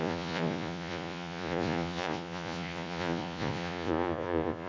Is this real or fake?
fake